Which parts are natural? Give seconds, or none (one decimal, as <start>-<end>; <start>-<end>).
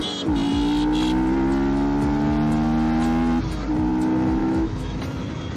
0.0-4.4; 5.0-5.6